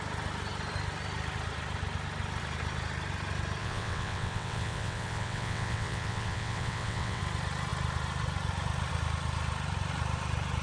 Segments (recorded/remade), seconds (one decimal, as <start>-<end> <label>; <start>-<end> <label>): 0.0-3.6 recorded; 3.6-7.2 remade; 7.2-10.6 recorded